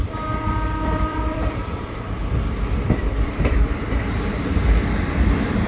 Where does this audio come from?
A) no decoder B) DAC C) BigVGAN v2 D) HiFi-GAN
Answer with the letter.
C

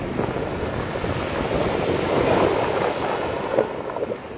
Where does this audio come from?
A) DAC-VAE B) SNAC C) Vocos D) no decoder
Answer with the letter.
D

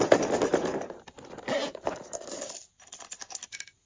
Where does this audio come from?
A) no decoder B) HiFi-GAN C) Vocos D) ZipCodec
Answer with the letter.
A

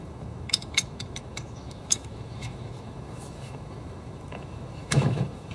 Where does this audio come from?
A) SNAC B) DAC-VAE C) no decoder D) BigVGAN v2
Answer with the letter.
B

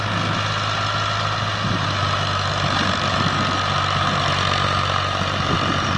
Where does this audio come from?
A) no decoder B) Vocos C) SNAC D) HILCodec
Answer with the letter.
A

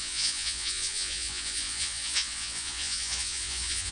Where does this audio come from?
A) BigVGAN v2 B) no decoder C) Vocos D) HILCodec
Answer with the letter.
C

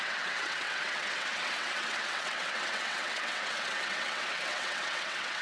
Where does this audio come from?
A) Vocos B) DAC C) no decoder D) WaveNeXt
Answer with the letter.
D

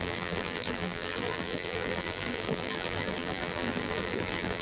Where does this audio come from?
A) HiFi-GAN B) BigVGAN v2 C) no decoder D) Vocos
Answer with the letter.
B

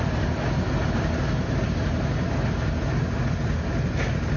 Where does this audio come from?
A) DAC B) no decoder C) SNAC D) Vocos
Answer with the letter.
B